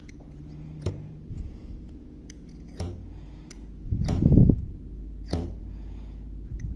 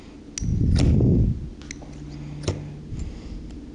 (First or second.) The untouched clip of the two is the second